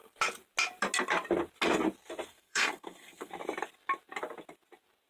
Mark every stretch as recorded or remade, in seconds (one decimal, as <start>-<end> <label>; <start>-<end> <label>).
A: 0.0-2.3 recorded; 2.3-3.3 remade; 3.3-5.1 recorded